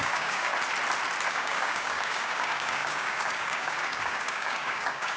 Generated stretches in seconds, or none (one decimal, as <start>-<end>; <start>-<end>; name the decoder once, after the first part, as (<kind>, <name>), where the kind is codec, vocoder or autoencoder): 0.0-0.5 (codec, DAC); 1.3-5.2

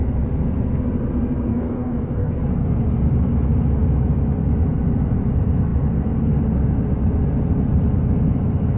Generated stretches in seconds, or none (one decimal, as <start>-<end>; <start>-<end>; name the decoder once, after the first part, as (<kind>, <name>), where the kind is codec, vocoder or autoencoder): 1.5-2.3 (codec, DAC)

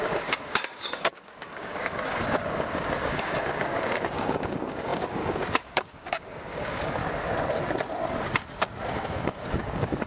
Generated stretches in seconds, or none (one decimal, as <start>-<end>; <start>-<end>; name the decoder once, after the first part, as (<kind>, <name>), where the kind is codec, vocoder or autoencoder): 0.0-7.0 (codec, DAC); 8.8-10.1

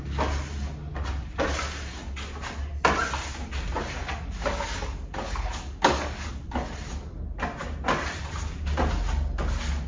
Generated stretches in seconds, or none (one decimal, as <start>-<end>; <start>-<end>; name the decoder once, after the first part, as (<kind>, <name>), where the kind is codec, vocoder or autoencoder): 4.0-6.3 (codec, DAC)

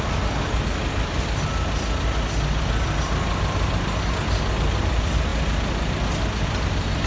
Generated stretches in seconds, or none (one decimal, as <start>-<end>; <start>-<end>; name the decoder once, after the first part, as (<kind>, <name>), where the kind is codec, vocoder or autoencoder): none

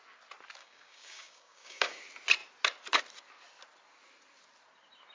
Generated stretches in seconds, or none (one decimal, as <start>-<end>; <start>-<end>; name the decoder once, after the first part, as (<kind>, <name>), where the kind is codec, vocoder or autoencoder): 0.6-2.0 (codec, DAC)

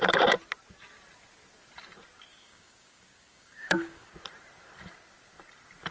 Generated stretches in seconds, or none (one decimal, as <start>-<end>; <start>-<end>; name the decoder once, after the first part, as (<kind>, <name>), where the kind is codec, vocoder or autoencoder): 2.3-4.1 (codec, DAC)